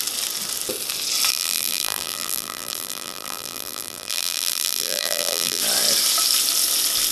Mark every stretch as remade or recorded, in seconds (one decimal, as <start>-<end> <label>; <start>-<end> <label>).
0.0-1.3 recorded; 1.3-5.6 remade; 5.6-7.1 recorded